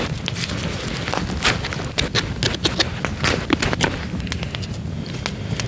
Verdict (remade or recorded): recorded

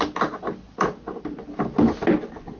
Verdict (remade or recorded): recorded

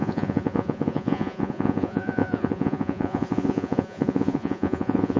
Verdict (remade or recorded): remade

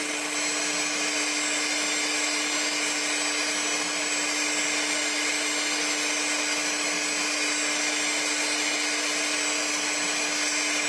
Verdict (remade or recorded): recorded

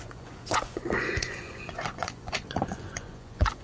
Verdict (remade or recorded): remade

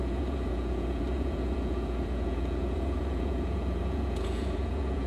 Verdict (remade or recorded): remade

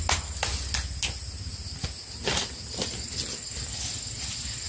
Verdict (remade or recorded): recorded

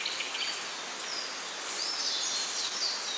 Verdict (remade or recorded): recorded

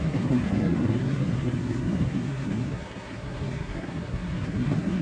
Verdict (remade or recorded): remade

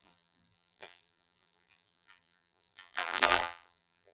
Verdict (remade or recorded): remade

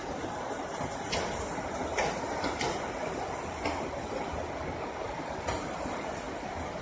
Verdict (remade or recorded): recorded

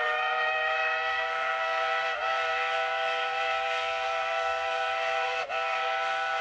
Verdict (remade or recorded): remade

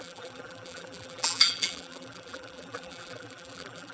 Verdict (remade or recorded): remade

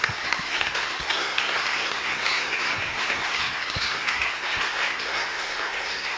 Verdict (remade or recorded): remade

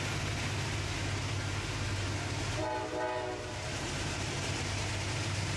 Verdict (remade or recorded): recorded